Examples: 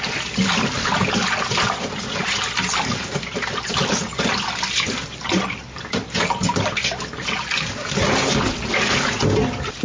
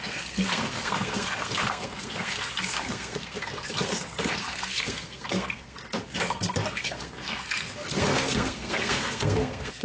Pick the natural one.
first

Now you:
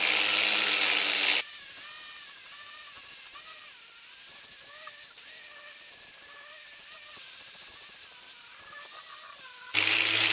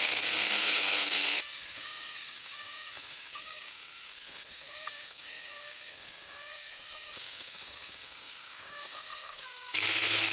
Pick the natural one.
first